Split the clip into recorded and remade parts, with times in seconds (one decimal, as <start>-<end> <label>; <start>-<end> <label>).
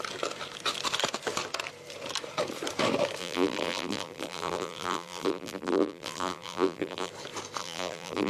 0.0-3.2 recorded; 3.2-7.1 remade; 7.1-7.6 recorded; 7.6-8.3 remade